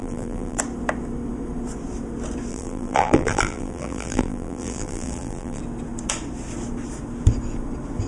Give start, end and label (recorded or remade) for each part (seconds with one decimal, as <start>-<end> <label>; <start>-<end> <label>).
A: 0.0-0.6 remade; 0.6-2.5 recorded; 2.5-5.6 remade; 5.6-8.1 recorded